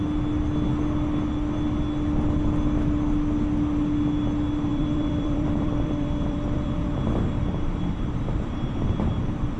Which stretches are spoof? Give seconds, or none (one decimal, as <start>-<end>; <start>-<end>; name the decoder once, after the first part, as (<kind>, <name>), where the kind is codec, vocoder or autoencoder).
4.7-9.6 (vocoder, BigVGAN v2)